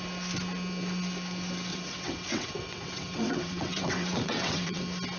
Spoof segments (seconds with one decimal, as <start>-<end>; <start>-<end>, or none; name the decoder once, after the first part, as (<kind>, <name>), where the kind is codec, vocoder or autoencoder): 1.7-4.8 (vocoder, WaveNeXt)